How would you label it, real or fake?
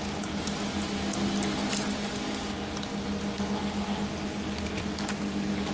real